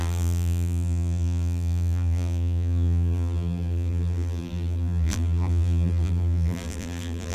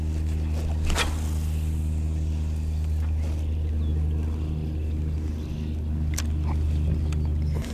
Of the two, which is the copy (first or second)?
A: first